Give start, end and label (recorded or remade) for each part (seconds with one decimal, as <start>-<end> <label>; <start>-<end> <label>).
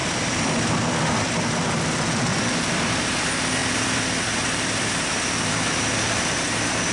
0.0-0.6 remade; 0.6-2.3 recorded; 2.3-3.0 remade; 3.0-3.6 recorded; 3.6-5.8 remade; 5.8-6.9 recorded